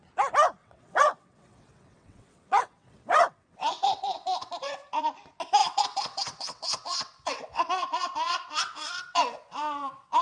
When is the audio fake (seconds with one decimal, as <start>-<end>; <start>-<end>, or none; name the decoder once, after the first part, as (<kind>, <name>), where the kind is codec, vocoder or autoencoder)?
0.6-5.0 (vocoder, WaveNeXt); 5.6-10.2